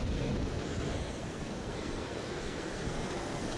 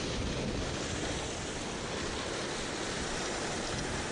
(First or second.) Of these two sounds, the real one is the second